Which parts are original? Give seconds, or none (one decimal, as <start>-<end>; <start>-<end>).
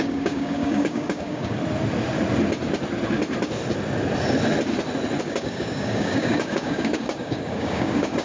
1.6-5.2